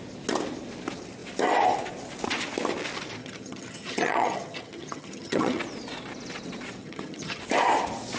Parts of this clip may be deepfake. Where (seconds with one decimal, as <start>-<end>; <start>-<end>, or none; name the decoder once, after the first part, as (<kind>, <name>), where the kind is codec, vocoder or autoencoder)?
3.2-5.6 (vocoder, HiFi-GAN); 6.8-7.4